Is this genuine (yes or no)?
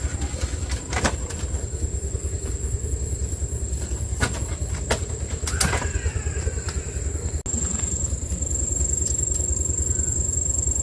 yes